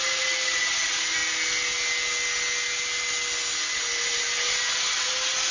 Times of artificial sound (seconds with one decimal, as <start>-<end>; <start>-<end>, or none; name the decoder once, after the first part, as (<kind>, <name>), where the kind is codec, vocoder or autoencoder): none